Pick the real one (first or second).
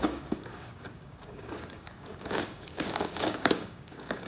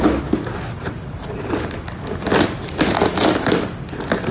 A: second